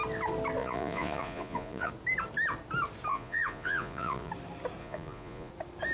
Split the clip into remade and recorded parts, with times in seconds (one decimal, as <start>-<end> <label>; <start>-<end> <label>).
0.0-0.6 recorded; 0.6-1.9 remade; 1.9-3.1 recorded; 3.1-4.3 remade; 4.3-4.8 recorded; 4.8-5.5 remade; 5.5-5.9 recorded